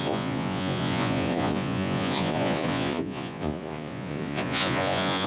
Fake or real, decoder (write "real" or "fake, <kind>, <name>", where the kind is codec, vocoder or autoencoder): fake, vocoder, Vocos